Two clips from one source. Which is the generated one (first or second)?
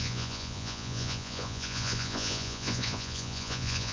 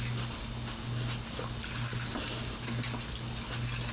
first